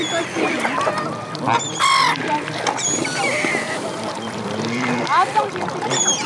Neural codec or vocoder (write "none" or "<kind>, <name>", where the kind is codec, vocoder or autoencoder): vocoder, BigVGAN v2